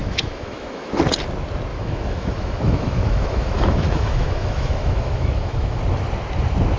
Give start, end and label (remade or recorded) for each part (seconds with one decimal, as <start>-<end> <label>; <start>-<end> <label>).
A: 0.0-1.0 remade; 1.0-1.7 recorded; 1.7-5.8 remade; 5.8-6.8 recorded

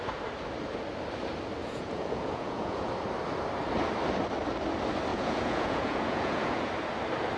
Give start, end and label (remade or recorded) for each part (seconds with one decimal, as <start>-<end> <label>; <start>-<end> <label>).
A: 0.0-1.6 recorded; 1.6-2.9 remade; 2.9-5.1 recorded; 5.1-6.7 remade; 6.7-7.4 recorded

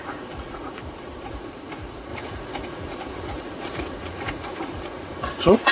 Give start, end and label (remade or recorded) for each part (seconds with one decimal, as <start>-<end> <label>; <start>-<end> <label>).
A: 0.0-5.7 remade

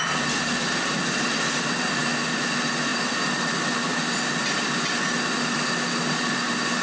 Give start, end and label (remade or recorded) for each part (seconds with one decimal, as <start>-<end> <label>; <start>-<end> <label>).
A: 0.0-6.8 recorded

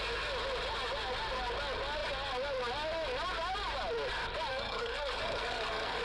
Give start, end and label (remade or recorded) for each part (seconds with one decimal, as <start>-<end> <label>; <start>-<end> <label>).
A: 0.0-4.5 recorded; 4.5-6.0 remade

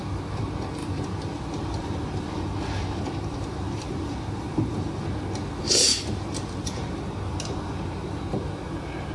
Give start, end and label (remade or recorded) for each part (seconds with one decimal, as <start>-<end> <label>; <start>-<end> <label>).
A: 0.0-0.8 recorded; 0.8-5.0 remade; 5.0-5.9 recorded; 5.9-6.9 remade; 6.9-9.1 recorded

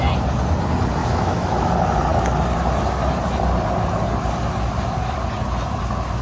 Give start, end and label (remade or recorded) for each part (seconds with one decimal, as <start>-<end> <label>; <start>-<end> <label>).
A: 0.0-1.0 recorded; 1.0-1.7 remade; 1.7-6.2 recorded